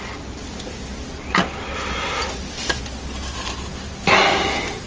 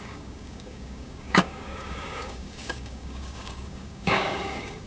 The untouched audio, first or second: first